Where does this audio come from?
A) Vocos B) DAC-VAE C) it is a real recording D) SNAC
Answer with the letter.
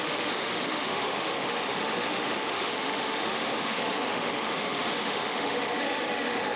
B